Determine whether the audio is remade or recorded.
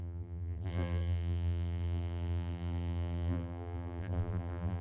remade